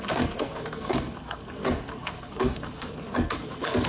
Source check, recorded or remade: remade